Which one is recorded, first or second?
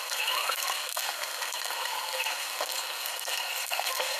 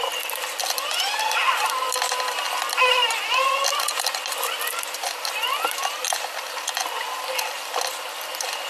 second